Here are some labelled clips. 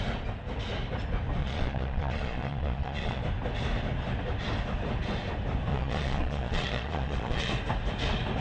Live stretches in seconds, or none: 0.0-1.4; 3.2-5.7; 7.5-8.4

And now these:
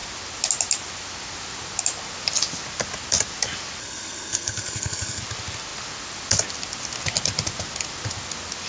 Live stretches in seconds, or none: 0.0-3.8; 5.2-8.7

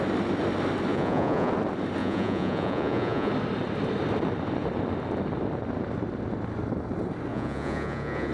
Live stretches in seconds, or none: 0.0-0.9; 1.5-2.0; 3.3-7.3

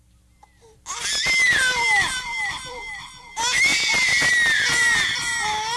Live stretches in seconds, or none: 0.0-5.8

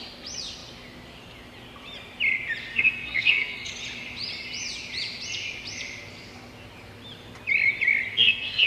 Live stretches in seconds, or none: 0.0-2.7; 3.7-8.1